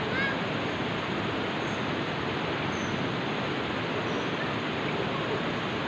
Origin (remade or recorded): recorded